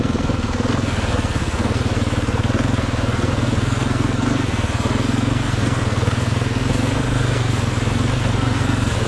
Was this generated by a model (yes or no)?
yes